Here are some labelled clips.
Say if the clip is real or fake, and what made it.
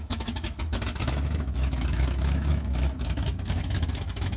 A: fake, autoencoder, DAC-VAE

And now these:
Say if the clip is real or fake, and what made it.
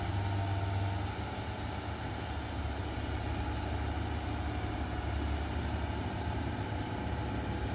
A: real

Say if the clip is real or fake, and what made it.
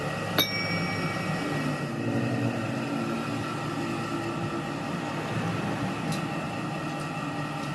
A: real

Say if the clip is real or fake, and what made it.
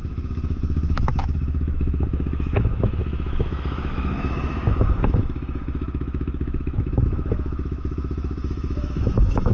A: fake, autoencoder, DAC-VAE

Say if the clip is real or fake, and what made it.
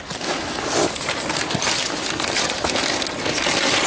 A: real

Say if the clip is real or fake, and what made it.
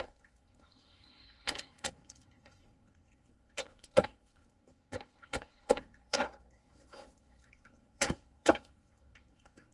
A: fake, codec, SNAC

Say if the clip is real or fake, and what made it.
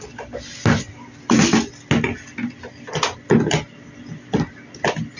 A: real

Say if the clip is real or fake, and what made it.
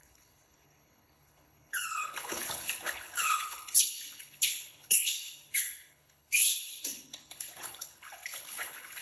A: fake, codec, HILCodec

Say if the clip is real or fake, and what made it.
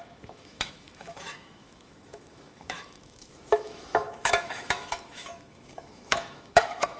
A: fake, autoencoder, DAC-VAE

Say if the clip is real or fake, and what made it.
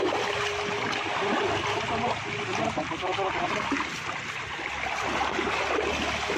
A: real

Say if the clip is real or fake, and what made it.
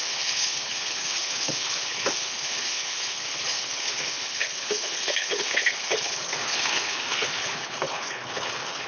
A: fake, codec, HILCodec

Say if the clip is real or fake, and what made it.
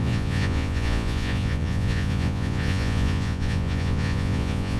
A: fake, vocoder, Vocos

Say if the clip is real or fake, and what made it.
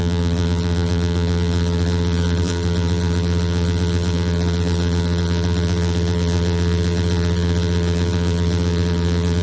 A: fake, vocoder, BigVGAN v2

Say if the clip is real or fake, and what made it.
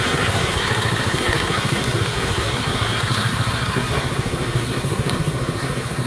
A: fake, codec, SNAC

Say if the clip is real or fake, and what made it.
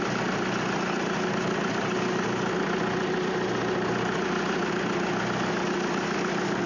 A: real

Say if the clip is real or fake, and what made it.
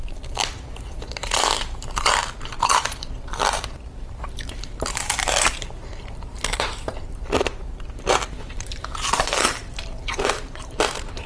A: fake, vocoder, BigVGAN v2